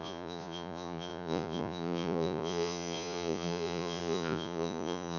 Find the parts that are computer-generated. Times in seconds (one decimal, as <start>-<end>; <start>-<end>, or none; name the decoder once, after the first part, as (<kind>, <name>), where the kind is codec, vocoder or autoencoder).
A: 0.0-5.2 (vocoder, Vocos)